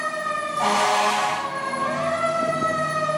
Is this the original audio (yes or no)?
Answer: yes